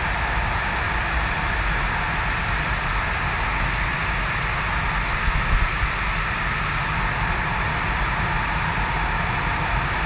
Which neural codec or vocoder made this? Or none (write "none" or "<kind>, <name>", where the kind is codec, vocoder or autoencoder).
none